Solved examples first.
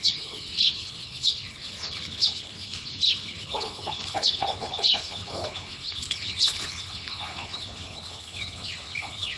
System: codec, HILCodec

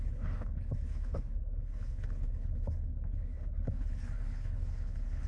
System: codec, HILCodec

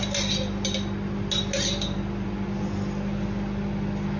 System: none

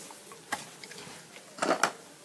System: none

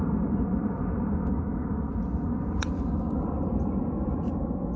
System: none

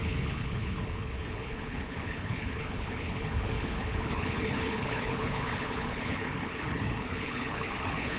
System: codec, HILCodec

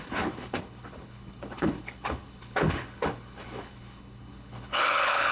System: codec, HILCodec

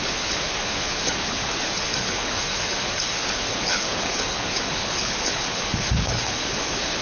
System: codec, HILCodec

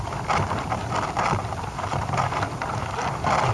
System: none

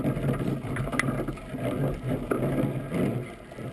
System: none